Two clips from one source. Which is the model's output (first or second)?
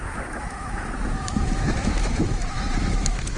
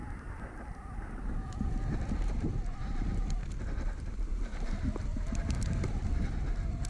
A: first